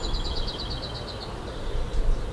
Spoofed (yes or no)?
no